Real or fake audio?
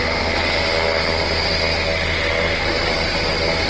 real